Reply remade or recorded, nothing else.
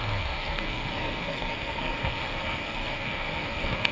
remade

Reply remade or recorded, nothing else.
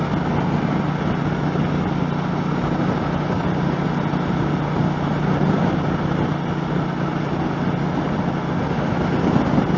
recorded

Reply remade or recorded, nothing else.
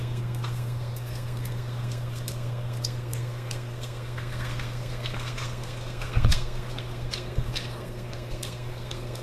remade